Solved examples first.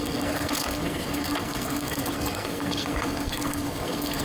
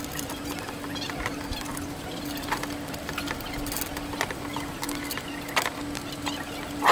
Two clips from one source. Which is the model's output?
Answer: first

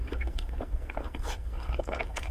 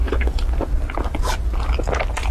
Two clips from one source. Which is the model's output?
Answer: first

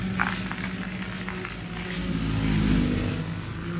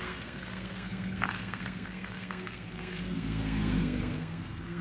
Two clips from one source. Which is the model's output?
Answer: second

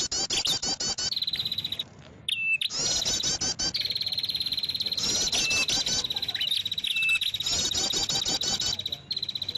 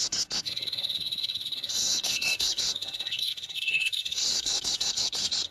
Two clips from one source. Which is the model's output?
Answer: second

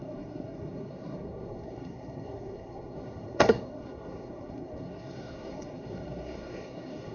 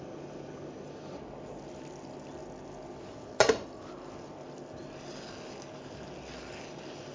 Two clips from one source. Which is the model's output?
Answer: first